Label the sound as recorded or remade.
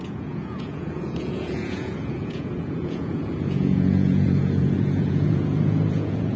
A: remade